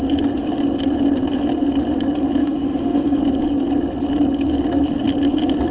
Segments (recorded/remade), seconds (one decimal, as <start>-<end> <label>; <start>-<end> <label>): 0.0-2.4 recorded; 2.4-3.2 remade; 3.2-5.7 recorded